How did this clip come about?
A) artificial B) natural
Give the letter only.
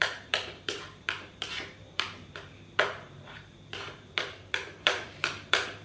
A